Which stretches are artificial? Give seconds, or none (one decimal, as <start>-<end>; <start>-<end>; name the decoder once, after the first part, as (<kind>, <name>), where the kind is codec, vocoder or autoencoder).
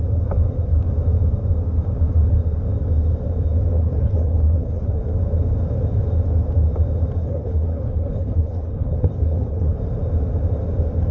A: 3.7-5.0 (codec, HILCodec); 7.2-9.8